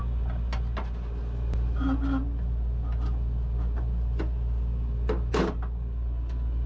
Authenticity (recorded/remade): recorded